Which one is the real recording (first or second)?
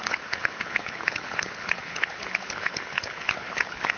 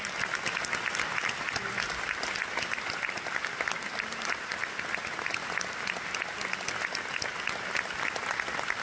second